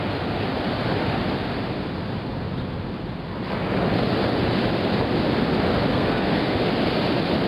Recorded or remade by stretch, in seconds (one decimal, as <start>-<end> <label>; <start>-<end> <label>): 0.0-5.9 recorded; 5.9-6.6 remade; 6.6-7.5 recorded